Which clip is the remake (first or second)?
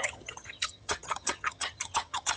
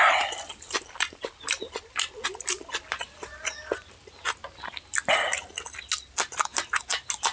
first